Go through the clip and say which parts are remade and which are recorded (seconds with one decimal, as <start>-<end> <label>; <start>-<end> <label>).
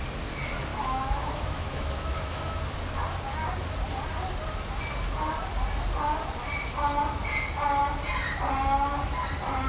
0.0-0.7 recorded; 0.7-2.6 remade; 2.6-9.7 recorded